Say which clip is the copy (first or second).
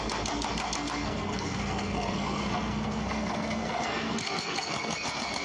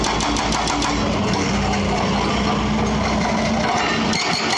first